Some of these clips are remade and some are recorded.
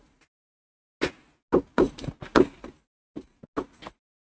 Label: recorded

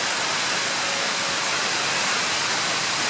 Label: recorded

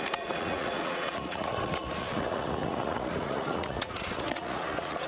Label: remade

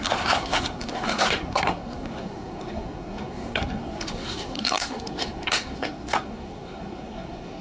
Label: remade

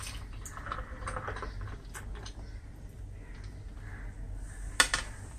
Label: recorded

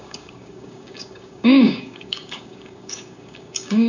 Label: remade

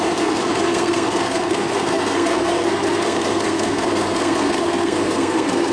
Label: remade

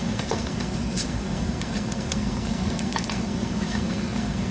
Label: remade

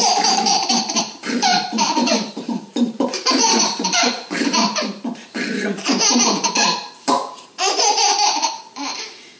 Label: remade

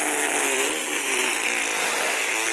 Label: recorded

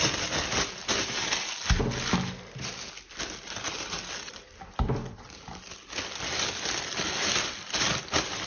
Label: recorded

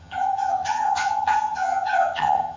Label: remade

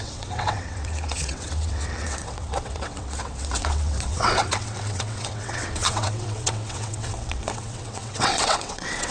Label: remade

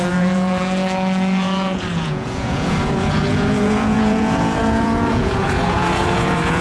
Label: remade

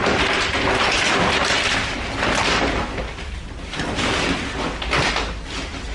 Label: recorded